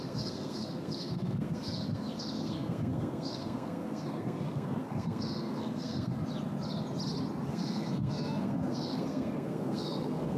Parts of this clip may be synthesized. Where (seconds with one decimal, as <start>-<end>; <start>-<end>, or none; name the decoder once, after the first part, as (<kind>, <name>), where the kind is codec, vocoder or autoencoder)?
0.0-6.1 (codec, SNAC); 7.5-10.4